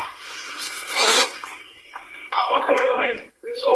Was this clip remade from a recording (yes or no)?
yes